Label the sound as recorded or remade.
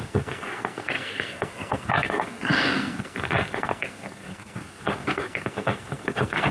remade